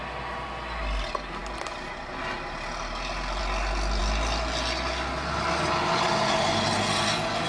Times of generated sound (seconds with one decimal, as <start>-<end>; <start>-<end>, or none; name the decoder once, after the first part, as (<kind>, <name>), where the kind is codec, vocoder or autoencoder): none